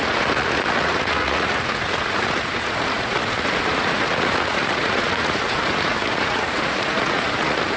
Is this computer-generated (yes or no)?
yes